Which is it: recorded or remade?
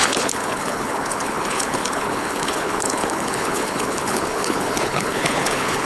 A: remade